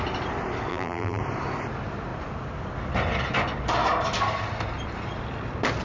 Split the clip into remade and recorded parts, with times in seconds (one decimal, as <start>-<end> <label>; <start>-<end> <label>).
0.0-0.7 recorded; 0.7-1.2 remade; 1.2-5.8 recorded